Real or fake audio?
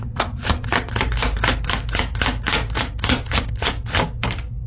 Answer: real